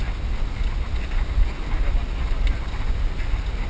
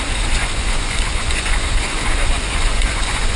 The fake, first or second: second